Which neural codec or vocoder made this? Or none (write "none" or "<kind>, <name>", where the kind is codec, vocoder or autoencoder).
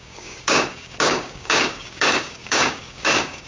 codec, DAC